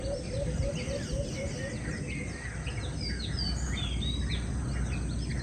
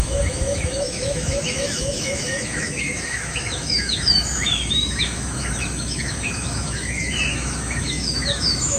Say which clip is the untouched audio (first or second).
first